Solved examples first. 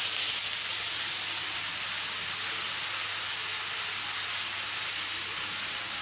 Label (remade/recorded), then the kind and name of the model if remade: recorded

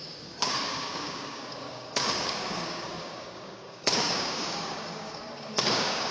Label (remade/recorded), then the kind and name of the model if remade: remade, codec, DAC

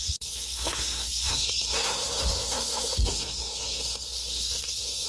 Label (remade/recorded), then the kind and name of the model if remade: remade, codec, SNAC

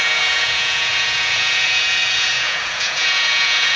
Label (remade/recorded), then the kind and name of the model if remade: remade, vocoder, Vocos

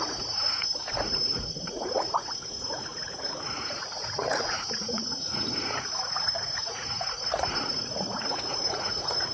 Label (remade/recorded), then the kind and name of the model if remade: remade, vocoder, Vocos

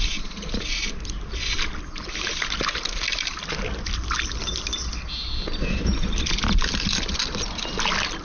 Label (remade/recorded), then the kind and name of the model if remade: recorded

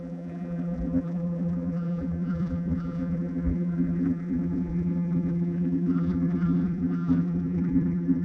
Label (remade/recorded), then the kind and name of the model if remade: remade, vocoder, BigVGAN v2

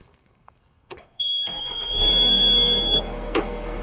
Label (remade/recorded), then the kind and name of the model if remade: remade, codec, SNAC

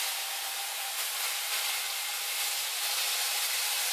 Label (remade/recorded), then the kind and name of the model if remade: recorded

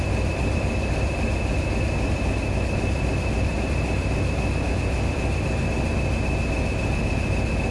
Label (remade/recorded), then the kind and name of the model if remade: recorded